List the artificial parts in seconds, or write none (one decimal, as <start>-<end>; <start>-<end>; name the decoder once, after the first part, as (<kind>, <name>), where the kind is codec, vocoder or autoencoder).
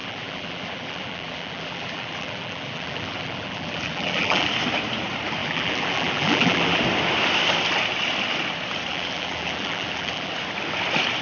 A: 0.0-4.5 (vocoder, BigVGAN v2); 5.4-6.8; 8.9-10.3